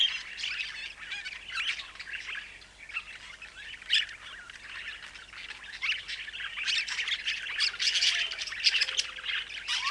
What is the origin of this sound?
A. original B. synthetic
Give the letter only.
A